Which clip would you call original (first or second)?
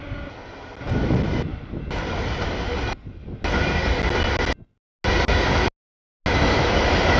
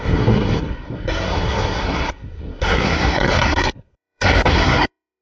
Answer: first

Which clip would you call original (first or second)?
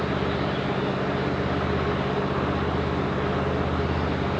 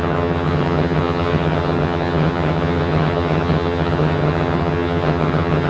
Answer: first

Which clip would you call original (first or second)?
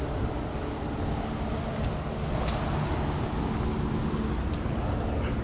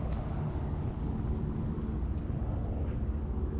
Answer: first